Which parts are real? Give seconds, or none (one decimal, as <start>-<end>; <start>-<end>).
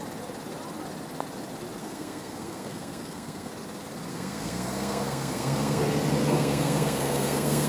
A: 0.0-1.8; 3.5-4.1; 5.8-6.2